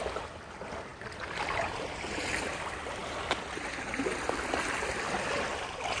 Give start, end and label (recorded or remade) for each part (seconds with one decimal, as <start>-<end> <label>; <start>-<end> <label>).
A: 0.0-6.0 recorded